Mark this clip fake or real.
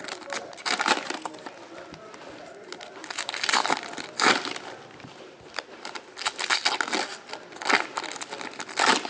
real